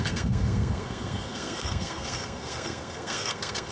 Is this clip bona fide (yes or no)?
no